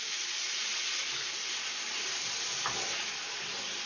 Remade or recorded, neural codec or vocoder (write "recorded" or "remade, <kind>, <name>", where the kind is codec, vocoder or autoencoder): recorded